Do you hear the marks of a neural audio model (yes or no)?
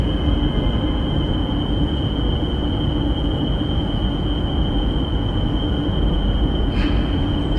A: yes